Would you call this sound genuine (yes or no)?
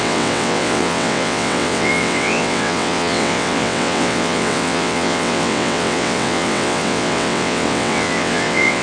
no